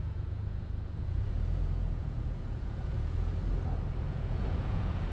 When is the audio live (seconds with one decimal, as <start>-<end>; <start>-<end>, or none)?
3.3-3.9